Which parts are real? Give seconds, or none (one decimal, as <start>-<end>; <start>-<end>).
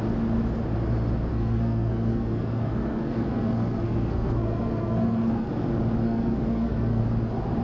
0.0-1.3; 5.5-6.0; 7.0-7.6